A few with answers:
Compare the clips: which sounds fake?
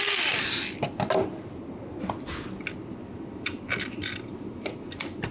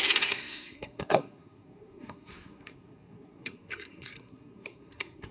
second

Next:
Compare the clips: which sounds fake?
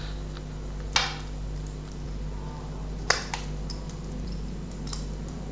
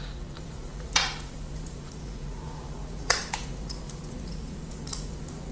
second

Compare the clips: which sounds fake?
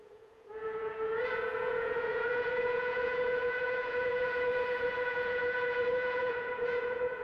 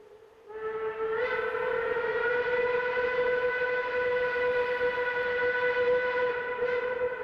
first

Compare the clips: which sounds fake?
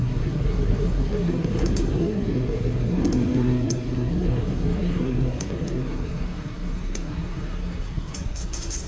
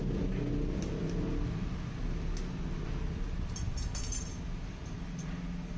first